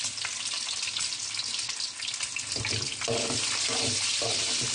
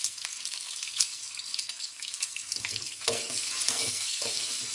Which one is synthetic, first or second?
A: second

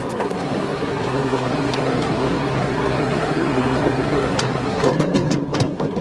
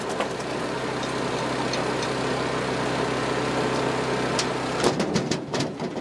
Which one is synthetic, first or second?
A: first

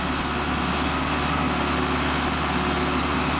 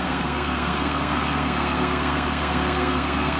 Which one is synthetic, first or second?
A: second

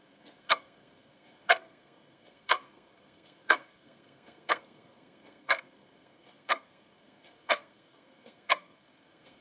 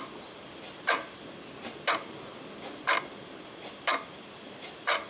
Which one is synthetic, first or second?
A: first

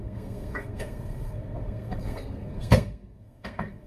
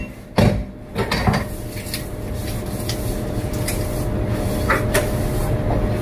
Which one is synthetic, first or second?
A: first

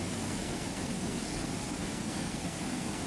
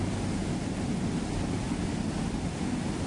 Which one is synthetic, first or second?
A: first